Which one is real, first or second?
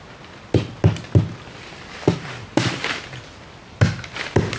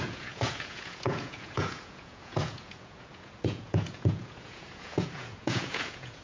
first